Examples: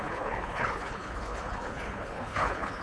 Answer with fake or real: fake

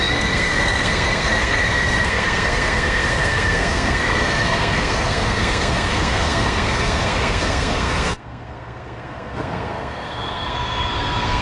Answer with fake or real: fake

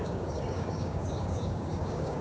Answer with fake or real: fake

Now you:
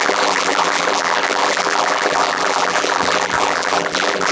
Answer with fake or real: fake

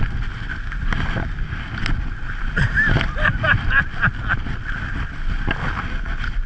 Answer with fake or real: real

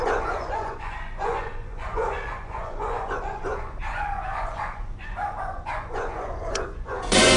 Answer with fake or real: fake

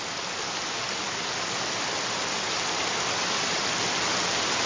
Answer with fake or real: real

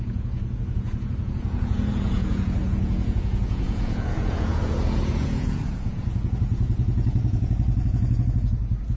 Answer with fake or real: fake